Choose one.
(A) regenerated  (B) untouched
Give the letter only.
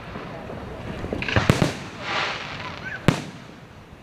B